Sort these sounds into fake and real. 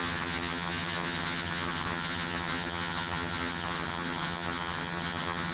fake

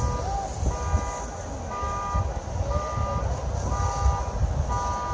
real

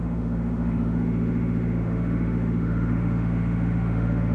fake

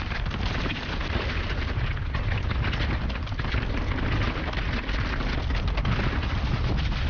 real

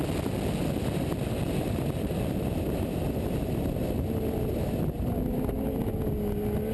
real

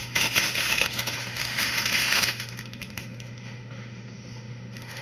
fake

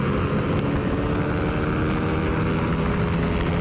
real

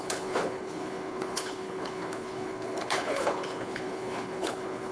fake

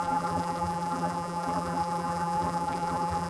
fake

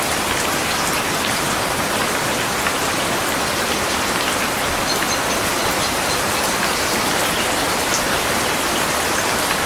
real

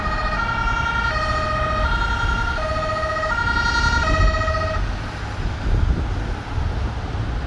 real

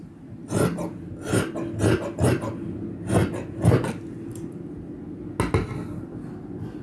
real